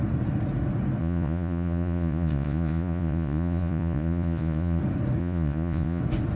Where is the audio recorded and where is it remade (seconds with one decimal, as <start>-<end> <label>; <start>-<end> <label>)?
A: 0.0-1.0 recorded; 1.0-4.8 remade; 4.8-5.2 recorded; 5.2-6.0 remade; 6.0-6.4 recorded